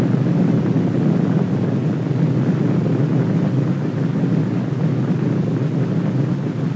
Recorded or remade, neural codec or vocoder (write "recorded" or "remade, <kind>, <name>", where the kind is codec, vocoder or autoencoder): recorded